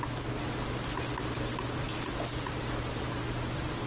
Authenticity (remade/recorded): recorded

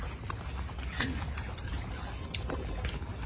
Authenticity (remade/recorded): recorded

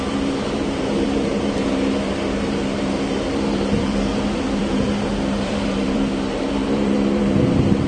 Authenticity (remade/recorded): remade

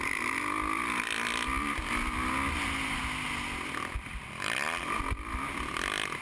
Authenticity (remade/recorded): recorded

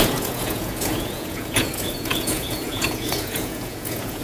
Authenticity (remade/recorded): remade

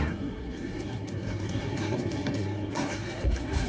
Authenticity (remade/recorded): remade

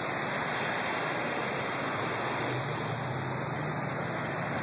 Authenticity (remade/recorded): recorded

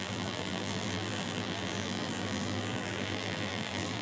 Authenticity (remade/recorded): remade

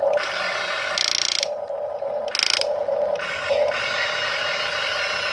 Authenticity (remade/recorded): recorded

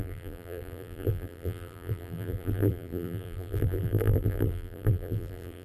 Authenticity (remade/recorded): remade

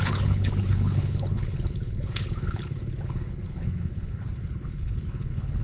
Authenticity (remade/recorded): remade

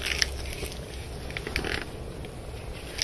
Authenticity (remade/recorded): recorded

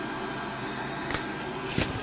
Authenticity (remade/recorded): recorded